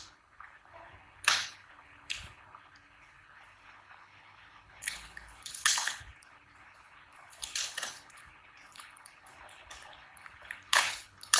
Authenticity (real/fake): fake